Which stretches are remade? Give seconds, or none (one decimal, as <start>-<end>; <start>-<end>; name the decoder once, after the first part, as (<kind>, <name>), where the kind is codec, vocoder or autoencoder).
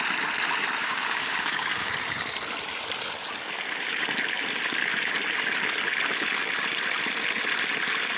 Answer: 0.8-1.9 (codec, DAC)